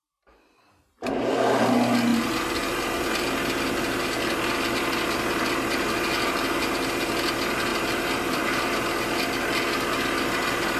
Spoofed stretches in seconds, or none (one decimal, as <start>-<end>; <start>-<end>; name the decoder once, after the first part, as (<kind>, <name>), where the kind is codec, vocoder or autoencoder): 7.7-8.4 (vocoder, BigVGAN v2)